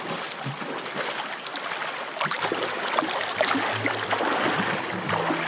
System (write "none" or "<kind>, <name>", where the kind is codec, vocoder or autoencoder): none